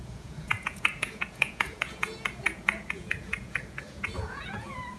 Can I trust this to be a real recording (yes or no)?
no